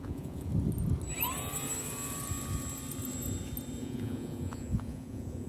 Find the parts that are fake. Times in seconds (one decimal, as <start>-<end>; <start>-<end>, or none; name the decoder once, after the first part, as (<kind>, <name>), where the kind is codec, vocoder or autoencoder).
0.0-0.5 (vocoder, Vocos); 3.8-5.5